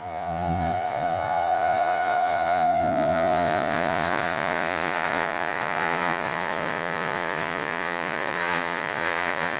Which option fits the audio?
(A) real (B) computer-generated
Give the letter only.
B